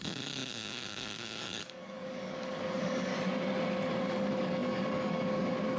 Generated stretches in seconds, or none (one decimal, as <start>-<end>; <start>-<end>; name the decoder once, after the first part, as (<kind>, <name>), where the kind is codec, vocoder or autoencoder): 0.0-3.1 (codec, DAC); 4.0-5.8